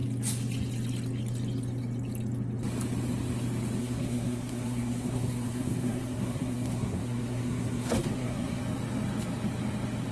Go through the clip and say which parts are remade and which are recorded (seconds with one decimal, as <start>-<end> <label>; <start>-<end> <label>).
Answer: 0.0-3.8 recorded; 3.8-8.6 remade; 8.6-10.1 recorded